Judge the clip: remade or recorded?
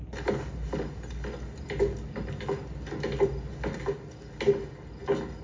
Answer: recorded